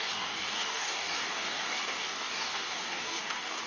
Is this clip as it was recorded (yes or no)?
no